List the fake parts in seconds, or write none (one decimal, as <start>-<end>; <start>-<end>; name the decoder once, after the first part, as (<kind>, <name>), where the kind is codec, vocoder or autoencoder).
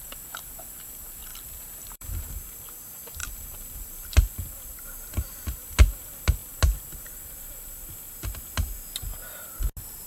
1.3-2.3 (vocoder, BigVGAN v2); 3.2-3.9